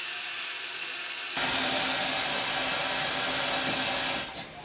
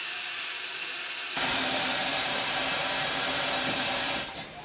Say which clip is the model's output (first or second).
second